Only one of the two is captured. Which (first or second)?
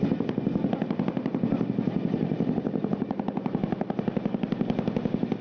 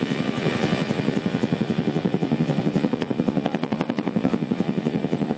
first